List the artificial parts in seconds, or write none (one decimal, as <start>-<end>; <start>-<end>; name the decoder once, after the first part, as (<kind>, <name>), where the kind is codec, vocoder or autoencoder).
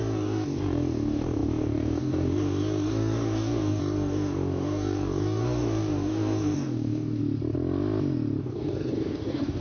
0.0-7.2 (codec, DAC); 8.4-9.6